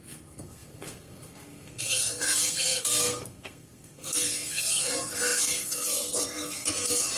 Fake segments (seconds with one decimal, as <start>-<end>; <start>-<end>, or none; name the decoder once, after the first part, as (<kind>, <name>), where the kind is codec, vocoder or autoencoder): 0.0-7.2 (codec, SNAC)